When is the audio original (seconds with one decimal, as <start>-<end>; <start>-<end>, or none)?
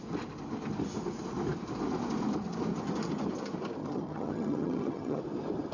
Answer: 0.0-3.8; 5.2-5.7